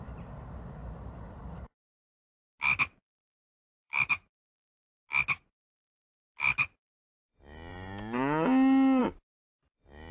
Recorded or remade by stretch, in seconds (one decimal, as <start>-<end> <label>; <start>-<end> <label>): 0.0-3.4 recorded; 3.4-4.4 remade; 4.4-10.1 recorded